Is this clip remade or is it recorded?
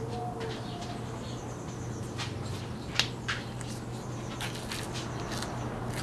recorded